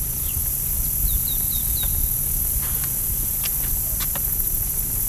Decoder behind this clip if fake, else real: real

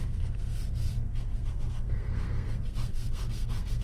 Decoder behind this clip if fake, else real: fake, codec, SNAC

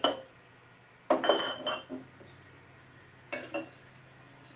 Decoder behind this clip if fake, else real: real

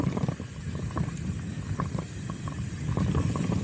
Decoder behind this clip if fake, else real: real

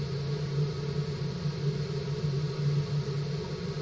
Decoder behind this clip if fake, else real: real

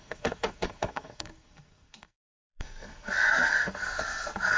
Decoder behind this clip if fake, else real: fake, codec, SNAC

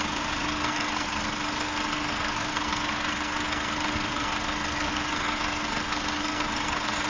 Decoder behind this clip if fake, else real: fake, codec, SNAC